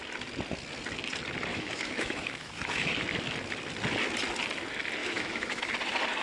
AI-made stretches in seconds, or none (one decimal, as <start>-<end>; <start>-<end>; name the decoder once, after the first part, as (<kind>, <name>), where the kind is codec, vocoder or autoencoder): 1.5-2.9 (autoencoder, DAC-VAE); 5.0-5.7